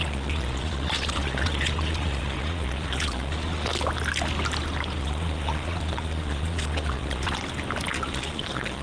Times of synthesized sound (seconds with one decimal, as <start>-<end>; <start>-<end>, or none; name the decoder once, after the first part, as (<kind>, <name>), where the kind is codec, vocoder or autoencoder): 0.0-3.7 (vocoder, Vocos); 5.0-7.4; 7.9-8.8